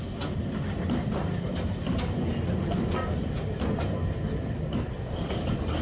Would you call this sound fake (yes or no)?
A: no